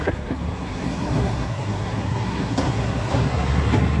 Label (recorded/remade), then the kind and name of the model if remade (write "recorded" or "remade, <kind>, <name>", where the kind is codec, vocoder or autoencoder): remade, codec, SNAC